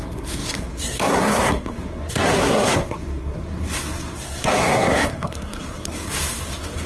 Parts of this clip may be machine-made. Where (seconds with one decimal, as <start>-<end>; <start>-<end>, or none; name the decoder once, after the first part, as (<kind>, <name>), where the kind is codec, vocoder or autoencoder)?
0.0-6.9 (codec, SNAC)